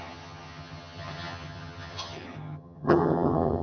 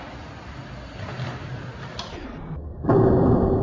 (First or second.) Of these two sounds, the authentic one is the second